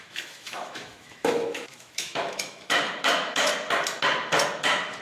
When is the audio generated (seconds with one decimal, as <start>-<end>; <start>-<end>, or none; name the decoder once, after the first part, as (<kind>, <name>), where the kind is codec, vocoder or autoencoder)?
0.0-3.5 (autoencoder, DAC-VAE); 4.6-5.0